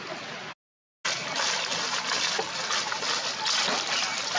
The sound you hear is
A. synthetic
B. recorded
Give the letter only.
B